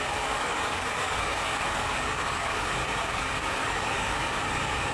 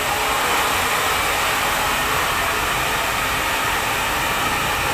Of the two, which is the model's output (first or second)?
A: first